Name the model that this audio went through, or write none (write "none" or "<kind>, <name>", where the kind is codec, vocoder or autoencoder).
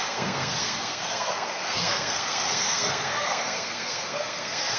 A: codec, SNAC